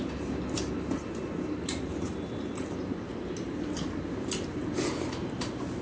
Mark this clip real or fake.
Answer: real